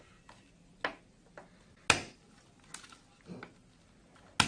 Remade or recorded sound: recorded